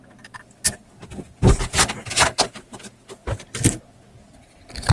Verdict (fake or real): real